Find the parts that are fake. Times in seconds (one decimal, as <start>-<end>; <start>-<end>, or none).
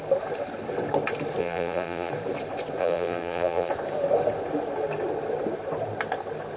1.4-2.1; 2.8-3.7